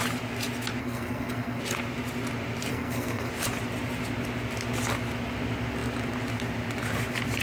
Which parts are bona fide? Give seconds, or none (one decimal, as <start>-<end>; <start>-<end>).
0.0-0.8; 1.6-2.7; 3.3-7.4